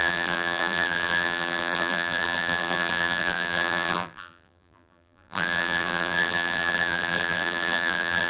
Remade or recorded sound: remade